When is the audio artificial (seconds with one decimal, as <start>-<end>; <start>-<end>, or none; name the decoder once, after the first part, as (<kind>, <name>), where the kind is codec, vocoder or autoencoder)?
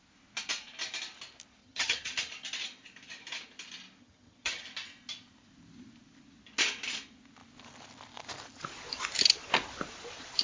1.6-2.3 (vocoder, HiFi-GAN); 4.0-4.6